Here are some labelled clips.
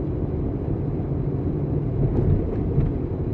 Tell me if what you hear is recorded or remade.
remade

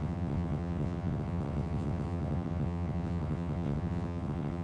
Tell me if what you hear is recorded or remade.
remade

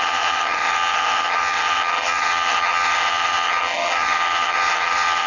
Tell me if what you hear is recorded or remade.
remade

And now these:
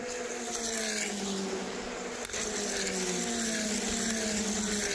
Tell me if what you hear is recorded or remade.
recorded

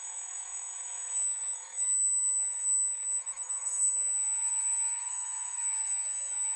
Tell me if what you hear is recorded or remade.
remade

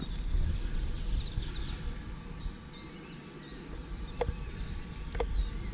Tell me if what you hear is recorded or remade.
recorded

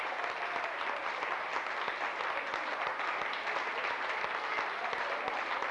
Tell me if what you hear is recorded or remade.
recorded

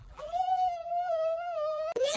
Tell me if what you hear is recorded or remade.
remade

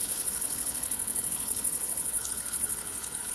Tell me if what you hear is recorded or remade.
remade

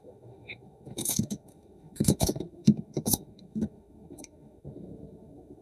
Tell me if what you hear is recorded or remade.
remade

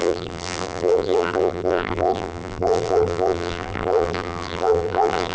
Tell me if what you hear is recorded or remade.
remade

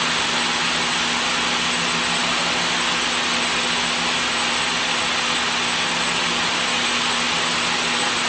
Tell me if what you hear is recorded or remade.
recorded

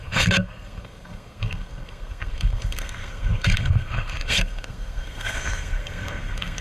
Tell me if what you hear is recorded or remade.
remade